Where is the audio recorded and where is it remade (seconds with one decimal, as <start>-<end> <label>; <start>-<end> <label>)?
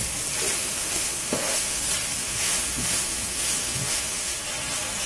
0.0-0.6 recorded; 0.6-1.8 remade; 1.8-2.2 recorded; 2.2-4.4 remade; 4.4-5.1 recorded